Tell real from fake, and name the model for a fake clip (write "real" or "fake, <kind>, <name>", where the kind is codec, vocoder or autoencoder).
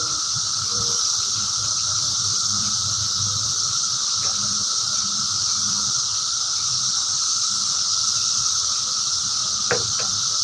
fake, vocoder, BigVGAN v2